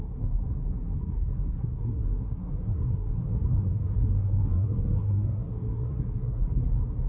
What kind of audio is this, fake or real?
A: fake